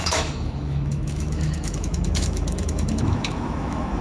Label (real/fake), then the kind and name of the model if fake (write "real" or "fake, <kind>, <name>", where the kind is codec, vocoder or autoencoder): fake, autoencoder, DAC-VAE